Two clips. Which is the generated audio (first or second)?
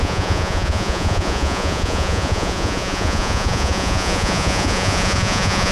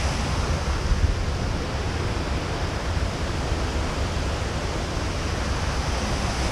first